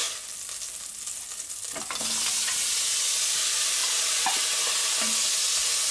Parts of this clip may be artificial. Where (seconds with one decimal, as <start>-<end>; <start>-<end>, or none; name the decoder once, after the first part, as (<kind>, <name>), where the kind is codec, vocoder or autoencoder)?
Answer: none